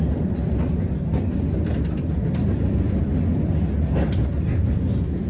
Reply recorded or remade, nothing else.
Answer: recorded